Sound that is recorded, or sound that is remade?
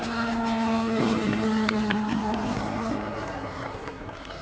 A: remade